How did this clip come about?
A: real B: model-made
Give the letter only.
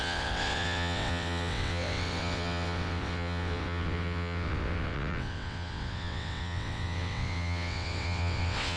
B